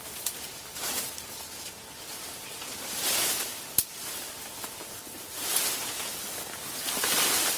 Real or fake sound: real